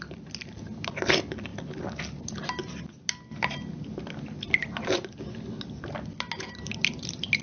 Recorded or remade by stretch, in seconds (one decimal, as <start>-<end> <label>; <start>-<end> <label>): 0.0-7.4 recorded

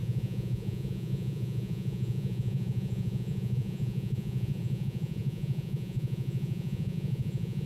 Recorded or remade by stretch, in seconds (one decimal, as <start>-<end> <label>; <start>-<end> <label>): 0.0-7.7 remade